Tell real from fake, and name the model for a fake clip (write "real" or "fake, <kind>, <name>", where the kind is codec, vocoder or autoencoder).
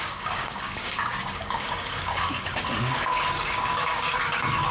fake, codec, DAC